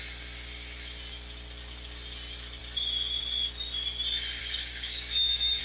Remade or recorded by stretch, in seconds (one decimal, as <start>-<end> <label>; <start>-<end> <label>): 0.0-4.4 recorded; 4.4-5.6 remade